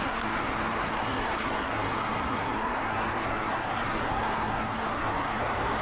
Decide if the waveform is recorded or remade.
remade